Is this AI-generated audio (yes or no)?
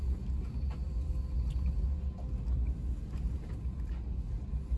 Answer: no